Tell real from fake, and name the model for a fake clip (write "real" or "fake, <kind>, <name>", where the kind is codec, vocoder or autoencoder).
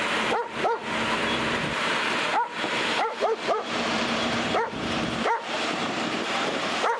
fake, vocoder, BigVGAN v2